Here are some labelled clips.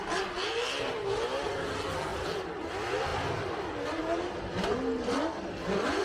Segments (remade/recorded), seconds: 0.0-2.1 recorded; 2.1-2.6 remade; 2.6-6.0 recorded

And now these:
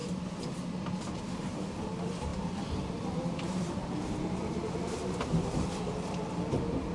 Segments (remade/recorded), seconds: 0.0-2.3 recorded; 2.3-6.4 remade; 6.4-6.9 recorded

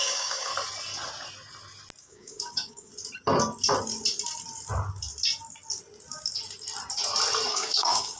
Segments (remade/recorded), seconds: 0.0-0.5 remade; 0.5-2.0 recorded; 2.0-2.9 remade; 2.9-7.5 recorded; 7.5-8.2 remade

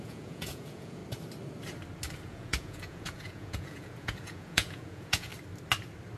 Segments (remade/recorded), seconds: 0.0-1.0 remade; 1.0-2.2 recorded; 2.2-5.3 remade; 5.3-6.2 recorded

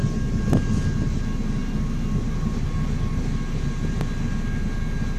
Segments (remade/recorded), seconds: 0.0-5.2 recorded

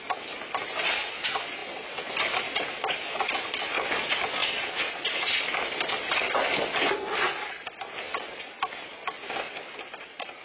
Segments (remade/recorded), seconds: 0.0-10.4 recorded

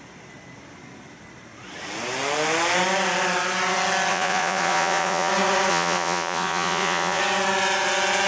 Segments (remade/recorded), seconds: 0.0-4.1 recorded; 4.1-5.3 remade; 5.3-5.7 recorded; 5.7-7.2 remade; 7.2-8.3 recorded